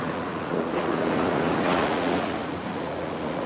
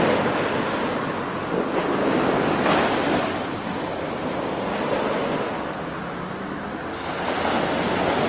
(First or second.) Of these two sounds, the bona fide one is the second